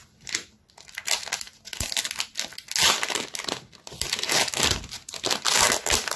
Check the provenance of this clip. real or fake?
real